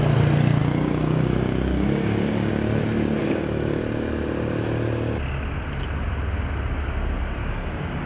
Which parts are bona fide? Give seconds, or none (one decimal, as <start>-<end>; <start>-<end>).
0.0-0.6; 2.5-3.2; 3.8-7.4